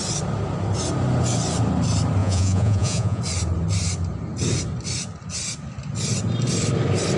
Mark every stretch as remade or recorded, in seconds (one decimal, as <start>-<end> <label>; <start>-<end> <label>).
0.0-2.2 recorded; 2.2-3.2 remade; 3.2-7.2 recorded